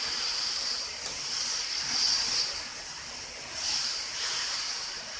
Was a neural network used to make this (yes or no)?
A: yes